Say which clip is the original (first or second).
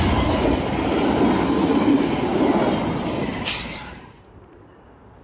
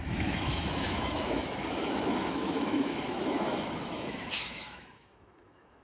first